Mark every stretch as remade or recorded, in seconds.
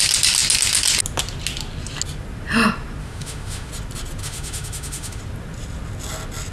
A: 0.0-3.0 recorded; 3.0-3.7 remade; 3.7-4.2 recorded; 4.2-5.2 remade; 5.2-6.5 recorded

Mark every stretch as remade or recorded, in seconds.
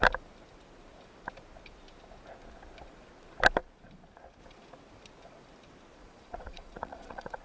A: 0.0-6.0 recorded; 6.0-7.4 remade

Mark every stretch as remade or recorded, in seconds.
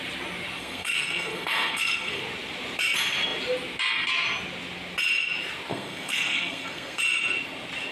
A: 0.0-0.6 recorded; 0.6-2.2 remade; 2.2-5.7 recorded; 5.7-7.0 remade; 7.0-7.9 recorded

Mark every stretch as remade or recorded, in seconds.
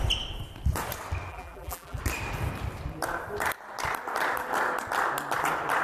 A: 0.0-1.3 recorded; 1.3-2.0 remade; 2.0-5.8 recorded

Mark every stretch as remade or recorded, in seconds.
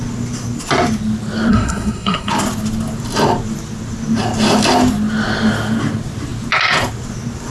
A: 0.0-1.5 recorded; 1.5-2.3 remade; 2.3-7.5 recorded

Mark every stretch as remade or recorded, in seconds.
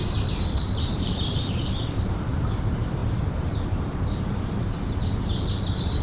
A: 0.0-2.2 remade; 2.2-3.0 recorded; 3.0-4.7 remade; 4.7-6.0 recorded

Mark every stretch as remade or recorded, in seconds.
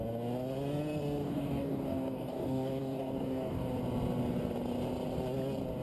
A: 0.0-1.2 recorded; 1.2-3.8 remade; 3.8-5.8 recorded